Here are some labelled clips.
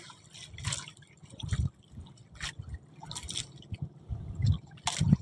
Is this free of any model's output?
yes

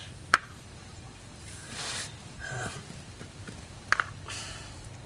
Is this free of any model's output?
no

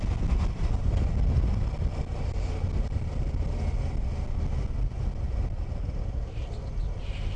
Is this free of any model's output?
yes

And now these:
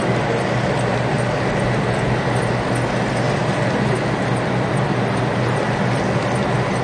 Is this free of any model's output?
yes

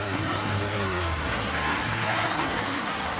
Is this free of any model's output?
no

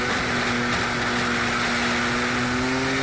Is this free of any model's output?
yes